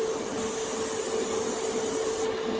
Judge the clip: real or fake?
real